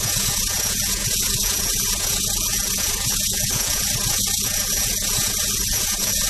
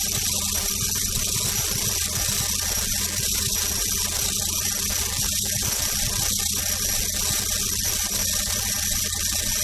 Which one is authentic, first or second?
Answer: second